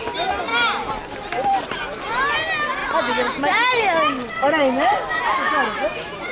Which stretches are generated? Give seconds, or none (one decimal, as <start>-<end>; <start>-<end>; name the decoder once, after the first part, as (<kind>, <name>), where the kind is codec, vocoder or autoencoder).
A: none